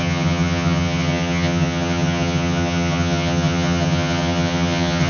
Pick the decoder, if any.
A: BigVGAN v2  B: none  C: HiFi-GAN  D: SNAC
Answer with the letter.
C